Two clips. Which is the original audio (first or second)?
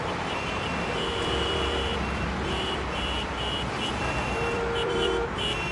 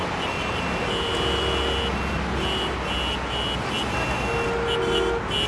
second